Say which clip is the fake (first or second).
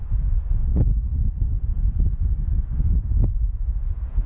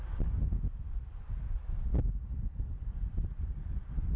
first